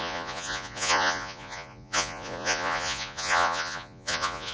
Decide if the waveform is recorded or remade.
remade